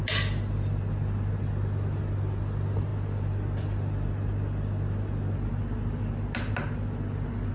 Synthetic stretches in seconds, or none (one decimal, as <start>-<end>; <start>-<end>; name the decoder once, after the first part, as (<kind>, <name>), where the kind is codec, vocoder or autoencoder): none